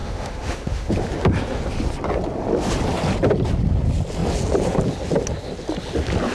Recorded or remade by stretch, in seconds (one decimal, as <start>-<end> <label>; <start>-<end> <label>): 0.0-0.9 remade; 0.9-6.3 recorded